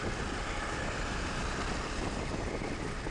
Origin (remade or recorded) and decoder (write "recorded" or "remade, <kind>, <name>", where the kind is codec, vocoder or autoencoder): recorded